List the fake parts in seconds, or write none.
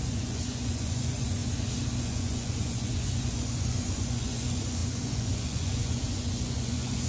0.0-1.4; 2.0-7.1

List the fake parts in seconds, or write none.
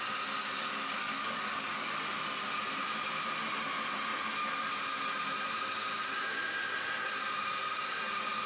0.4-1.9